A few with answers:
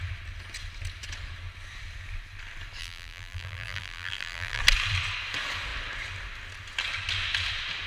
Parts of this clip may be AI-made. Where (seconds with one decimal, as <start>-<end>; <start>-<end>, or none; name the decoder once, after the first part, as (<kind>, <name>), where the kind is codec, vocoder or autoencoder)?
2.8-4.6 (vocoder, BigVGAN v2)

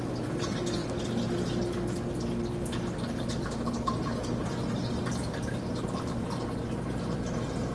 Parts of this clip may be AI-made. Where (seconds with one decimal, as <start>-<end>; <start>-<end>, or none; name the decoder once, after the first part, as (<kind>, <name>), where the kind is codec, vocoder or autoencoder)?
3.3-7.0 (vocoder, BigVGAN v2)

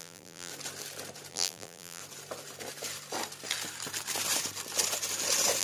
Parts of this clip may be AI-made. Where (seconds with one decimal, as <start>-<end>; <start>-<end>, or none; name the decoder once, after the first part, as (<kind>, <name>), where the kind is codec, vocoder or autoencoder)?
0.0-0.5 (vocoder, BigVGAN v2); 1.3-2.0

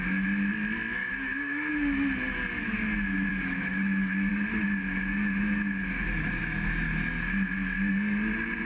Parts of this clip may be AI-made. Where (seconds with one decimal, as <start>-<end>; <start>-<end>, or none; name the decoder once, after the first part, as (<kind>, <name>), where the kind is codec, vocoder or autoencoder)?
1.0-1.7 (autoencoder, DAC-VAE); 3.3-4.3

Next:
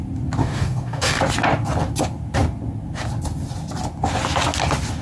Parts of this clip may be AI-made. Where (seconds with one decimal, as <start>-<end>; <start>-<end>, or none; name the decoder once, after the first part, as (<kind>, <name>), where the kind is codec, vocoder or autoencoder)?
0.4-1.2 (codec, DAC)

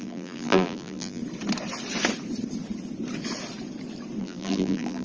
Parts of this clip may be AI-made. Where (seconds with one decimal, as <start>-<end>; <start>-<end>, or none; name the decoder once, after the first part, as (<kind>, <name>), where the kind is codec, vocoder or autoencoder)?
0.0-1.2 (vocoder, BigVGAN v2); 4.2-5.0

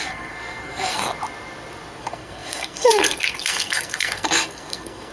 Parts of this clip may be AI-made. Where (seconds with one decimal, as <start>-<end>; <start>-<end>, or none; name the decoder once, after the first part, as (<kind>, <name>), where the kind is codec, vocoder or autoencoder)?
0.0-1.0 (codec, SNAC); 2.0-5.1